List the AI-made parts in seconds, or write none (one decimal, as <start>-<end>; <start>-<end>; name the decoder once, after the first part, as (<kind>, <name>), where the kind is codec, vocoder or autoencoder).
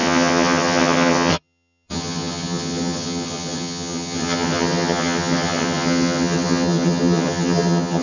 0.0-8.0 (vocoder, HiFi-GAN)